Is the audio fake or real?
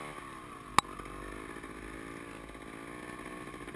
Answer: real